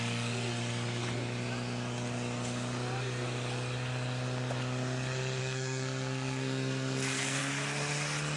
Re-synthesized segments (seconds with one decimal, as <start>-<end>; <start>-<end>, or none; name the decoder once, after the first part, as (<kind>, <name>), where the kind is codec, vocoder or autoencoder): 5.4-7.4 (codec, SNAC)